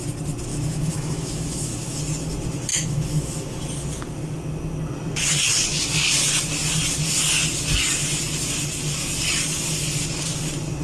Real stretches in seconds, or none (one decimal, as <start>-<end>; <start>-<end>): 0.0-0.5; 2.0-2.7; 3.6-10.8